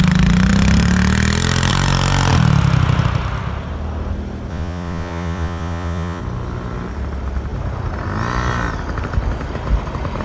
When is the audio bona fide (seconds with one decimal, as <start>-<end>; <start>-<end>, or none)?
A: 0.0-4.5; 6.2-10.2